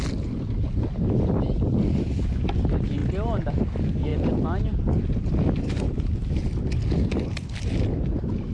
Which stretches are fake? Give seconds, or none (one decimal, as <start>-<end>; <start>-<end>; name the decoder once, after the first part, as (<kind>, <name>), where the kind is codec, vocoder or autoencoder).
none